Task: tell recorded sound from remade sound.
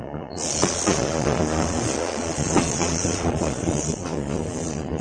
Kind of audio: remade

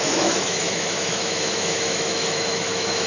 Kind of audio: remade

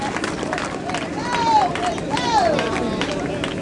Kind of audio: recorded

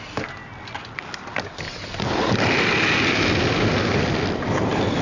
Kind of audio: recorded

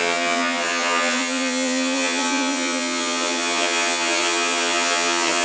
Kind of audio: remade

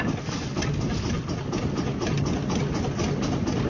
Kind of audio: recorded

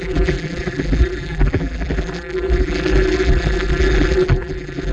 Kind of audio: remade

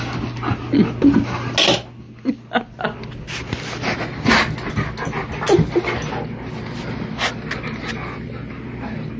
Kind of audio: recorded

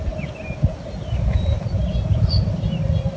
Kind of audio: recorded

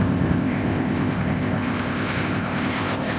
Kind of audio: remade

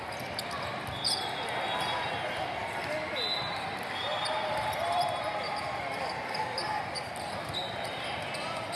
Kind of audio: recorded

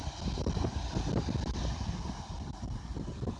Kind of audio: recorded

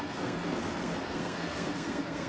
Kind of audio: remade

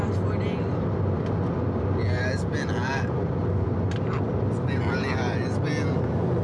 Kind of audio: recorded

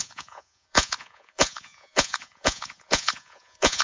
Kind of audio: remade